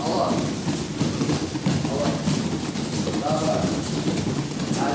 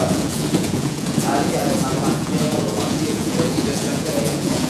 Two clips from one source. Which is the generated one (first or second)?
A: second